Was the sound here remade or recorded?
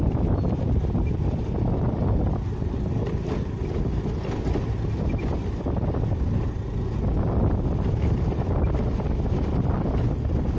recorded